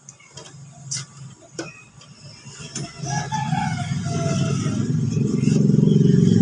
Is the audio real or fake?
real